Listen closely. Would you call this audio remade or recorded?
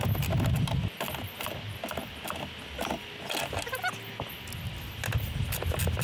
recorded